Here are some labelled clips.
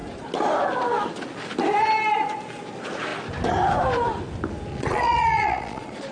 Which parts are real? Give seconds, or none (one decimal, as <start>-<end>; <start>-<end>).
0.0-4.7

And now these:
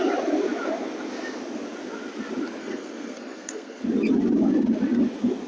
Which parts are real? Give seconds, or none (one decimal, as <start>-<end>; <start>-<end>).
0.0-2.6; 3.8-5.5

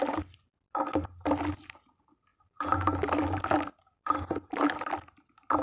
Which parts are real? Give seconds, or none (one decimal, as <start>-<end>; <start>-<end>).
0.0-5.6

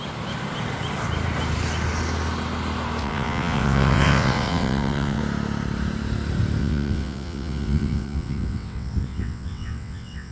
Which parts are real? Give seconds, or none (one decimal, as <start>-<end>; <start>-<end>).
0.0-3.0; 5.2-6.6